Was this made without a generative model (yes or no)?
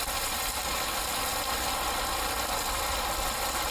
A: yes